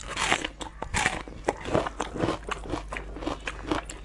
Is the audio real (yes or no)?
yes